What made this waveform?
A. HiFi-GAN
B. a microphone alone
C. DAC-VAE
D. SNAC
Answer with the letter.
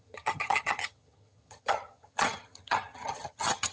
A